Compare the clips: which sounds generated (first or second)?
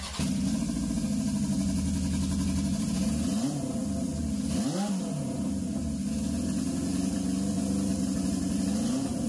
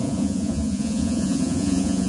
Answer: second